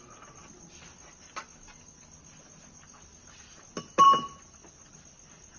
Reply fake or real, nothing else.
real